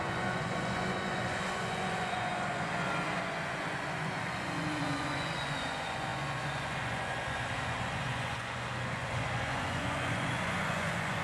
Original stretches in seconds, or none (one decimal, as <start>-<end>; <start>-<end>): none